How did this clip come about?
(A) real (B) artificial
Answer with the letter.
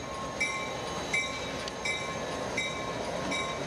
A